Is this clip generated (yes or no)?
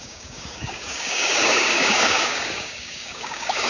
yes